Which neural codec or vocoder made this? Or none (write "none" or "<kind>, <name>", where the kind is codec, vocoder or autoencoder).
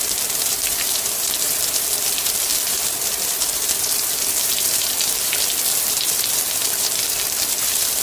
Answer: vocoder, BigVGAN v2